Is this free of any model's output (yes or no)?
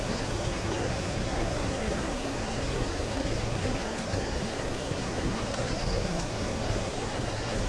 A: no